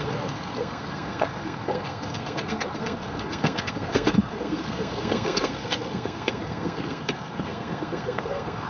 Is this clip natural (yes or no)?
no